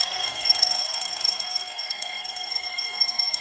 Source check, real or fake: fake